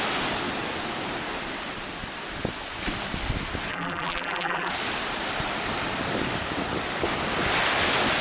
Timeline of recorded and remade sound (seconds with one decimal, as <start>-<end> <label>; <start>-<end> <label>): 0.0-3.7 recorded; 3.7-4.7 remade; 4.7-8.2 recorded